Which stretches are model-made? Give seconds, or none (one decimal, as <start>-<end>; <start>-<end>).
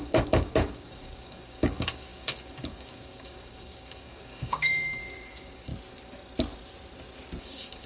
0.0-5.7; 7.4-7.9